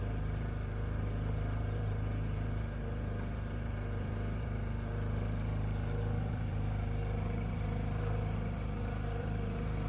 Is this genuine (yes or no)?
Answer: no